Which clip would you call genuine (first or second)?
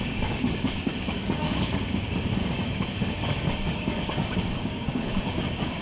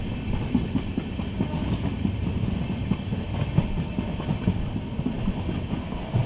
second